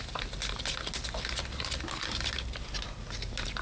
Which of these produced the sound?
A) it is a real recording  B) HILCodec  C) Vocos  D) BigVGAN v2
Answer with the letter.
A